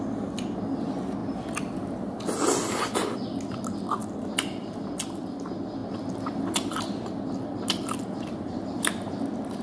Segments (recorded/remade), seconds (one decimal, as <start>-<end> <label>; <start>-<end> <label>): 0.0-1.2 recorded; 1.2-2.8 remade; 2.8-4.0 recorded; 4.0-5.3 remade; 5.3-5.8 recorded; 5.8-8.8 remade; 8.8-9.6 recorded